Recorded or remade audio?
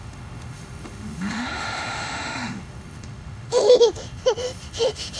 remade